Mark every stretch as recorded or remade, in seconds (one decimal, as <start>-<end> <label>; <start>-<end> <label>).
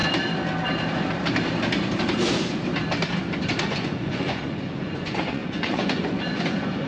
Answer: 0.0-3.6 recorded; 3.6-6.9 remade